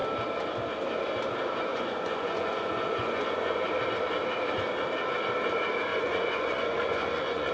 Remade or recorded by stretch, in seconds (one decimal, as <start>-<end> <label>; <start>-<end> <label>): 0.0-1.7 recorded; 1.7-3.7 remade; 3.7-5.9 recorded; 5.9-7.5 remade